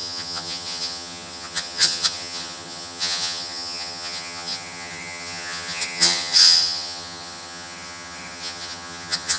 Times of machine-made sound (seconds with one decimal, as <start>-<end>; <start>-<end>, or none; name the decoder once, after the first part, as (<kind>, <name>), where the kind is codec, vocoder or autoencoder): 0.0-9.4 (vocoder, HiFi-GAN)